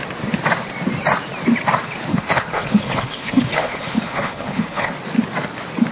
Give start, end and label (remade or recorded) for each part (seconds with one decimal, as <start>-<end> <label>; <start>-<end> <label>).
0.0-2.1 recorded; 2.1-4.9 remade; 4.9-5.9 recorded